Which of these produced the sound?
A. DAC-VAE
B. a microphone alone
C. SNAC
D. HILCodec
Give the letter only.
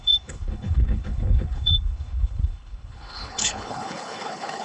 D